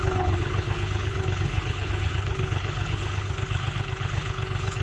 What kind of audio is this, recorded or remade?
remade